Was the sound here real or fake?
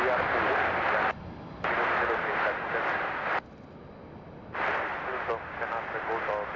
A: real